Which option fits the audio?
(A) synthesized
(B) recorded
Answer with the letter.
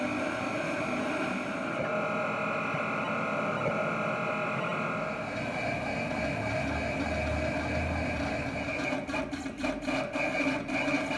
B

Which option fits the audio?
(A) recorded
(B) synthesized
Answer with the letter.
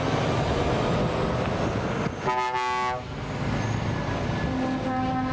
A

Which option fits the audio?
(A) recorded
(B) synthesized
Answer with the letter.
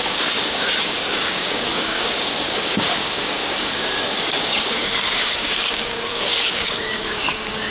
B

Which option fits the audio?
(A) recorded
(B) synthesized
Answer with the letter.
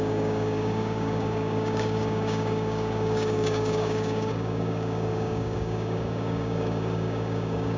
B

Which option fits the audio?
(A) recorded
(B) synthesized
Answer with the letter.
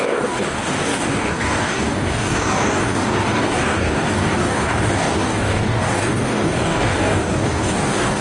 B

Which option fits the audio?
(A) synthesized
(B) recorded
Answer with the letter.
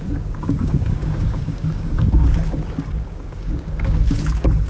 A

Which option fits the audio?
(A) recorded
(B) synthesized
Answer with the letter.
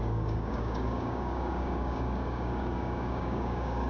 B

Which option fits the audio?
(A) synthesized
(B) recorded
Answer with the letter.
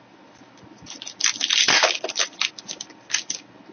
B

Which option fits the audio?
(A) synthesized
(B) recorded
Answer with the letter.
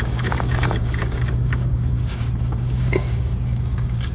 A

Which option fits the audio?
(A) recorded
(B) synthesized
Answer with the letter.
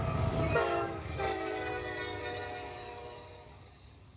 B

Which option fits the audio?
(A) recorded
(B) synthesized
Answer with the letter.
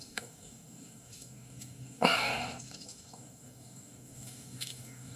B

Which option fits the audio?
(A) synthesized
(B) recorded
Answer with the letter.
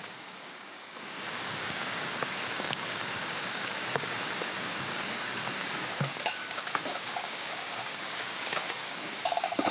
A